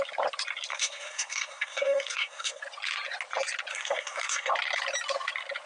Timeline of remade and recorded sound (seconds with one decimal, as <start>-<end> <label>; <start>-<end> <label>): 0.0-0.7 recorded; 0.7-2.6 remade; 2.6-3.7 recorded; 3.7-4.5 remade; 4.5-5.7 recorded